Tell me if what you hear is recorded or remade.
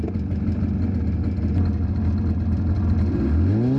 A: recorded